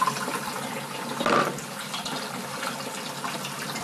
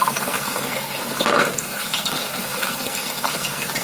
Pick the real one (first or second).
first